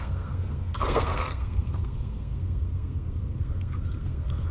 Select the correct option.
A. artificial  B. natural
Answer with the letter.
A